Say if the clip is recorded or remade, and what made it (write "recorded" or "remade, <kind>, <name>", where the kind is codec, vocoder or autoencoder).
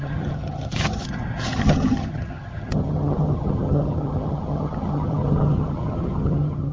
remade, vocoder, HiFi-GAN